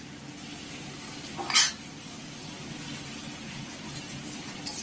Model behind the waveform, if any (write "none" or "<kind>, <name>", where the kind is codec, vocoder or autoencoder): none